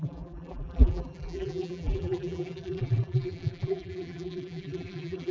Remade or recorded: remade